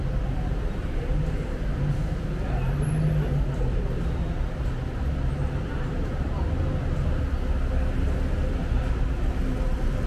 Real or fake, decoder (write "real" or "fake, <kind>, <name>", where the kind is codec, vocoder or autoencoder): real